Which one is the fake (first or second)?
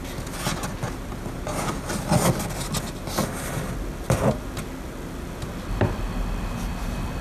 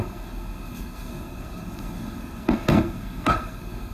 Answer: second